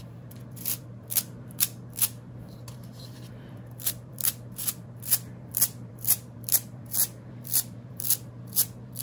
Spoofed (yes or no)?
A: yes